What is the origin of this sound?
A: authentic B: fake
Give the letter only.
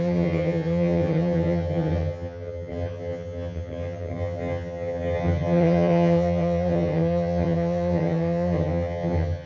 B